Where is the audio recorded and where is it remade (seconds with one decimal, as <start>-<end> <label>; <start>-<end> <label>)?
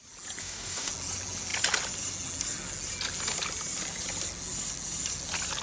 0.0-0.4 recorded; 0.4-0.9 remade; 0.9-5.6 recorded